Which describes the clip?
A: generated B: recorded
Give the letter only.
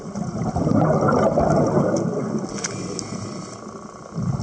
B